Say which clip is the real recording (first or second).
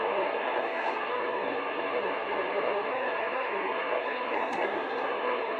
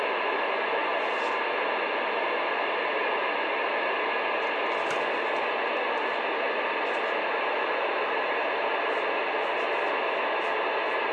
second